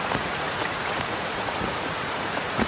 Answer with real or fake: fake